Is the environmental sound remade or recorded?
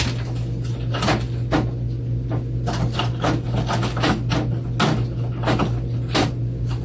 recorded